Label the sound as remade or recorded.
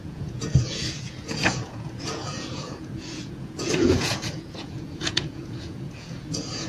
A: remade